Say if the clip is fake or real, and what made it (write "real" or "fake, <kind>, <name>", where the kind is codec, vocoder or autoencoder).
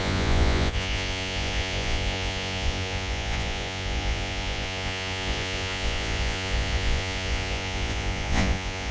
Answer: fake, vocoder, Vocos